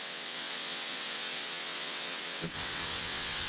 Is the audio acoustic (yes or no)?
no